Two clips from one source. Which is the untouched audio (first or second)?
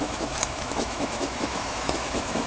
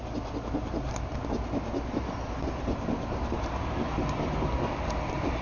second